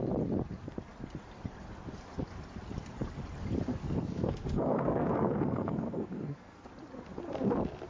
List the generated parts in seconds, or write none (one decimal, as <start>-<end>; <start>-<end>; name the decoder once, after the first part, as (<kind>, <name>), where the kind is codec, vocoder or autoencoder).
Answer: 3.7-6.7 (codec, SNAC)